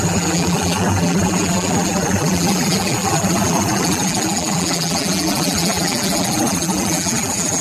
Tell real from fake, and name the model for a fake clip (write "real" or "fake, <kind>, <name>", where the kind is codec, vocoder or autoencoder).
fake, vocoder, BigVGAN v2